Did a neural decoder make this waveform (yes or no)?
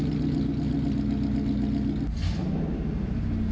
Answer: no